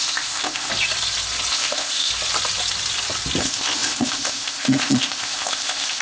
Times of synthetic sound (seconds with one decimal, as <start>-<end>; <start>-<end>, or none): 0.0-0.7; 1.5-2.1; 3.4-6.0

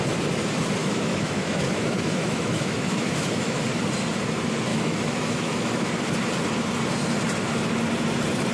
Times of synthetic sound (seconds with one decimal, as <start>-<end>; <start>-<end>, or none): 0.8-3.6; 4.7-5.9